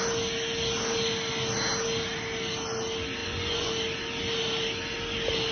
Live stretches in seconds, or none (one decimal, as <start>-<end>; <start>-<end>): 0.0-3.2; 3.7-5.5